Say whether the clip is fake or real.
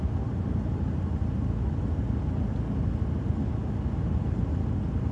real